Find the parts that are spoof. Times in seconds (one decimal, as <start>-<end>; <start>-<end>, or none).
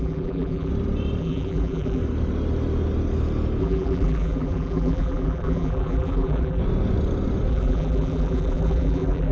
0.0-0.7; 1.2-2.0; 3.6-6.6; 7.5-9.3